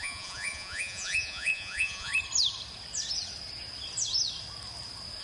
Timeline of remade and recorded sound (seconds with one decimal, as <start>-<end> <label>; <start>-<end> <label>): 0.0-2.1 remade; 2.1-5.2 recorded